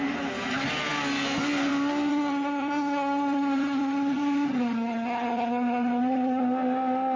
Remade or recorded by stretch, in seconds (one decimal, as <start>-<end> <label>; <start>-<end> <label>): 0.0-2.1 recorded; 2.1-6.4 remade; 6.4-7.2 recorded

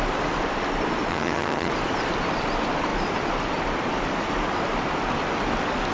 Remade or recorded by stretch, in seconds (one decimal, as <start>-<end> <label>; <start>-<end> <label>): 0.0-1.1 recorded; 1.1-1.7 remade; 1.7-5.9 recorded

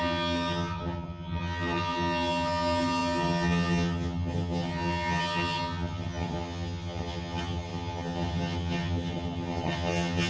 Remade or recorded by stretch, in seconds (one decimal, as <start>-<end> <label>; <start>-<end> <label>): 0.0-10.3 remade

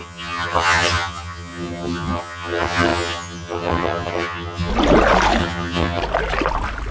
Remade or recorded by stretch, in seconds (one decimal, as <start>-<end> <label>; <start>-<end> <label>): 0.0-4.7 remade; 4.7-5.4 recorded; 5.4-6.0 remade; 6.0-6.9 recorded

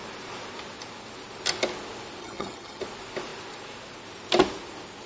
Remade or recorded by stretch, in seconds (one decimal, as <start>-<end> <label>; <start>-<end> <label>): 0.0-2.2 recorded; 2.2-2.8 remade; 2.8-5.1 recorded

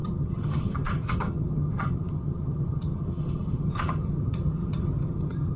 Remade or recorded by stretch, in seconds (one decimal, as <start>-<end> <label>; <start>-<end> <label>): 0.0-5.6 remade

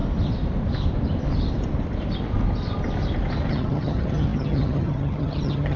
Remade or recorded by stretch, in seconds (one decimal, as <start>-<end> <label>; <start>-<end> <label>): 0.0-3.5 recorded; 3.5-5.8 remade